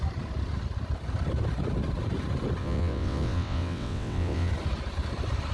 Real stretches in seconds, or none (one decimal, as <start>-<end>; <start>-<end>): 0.0-2.6; 4.5-5.5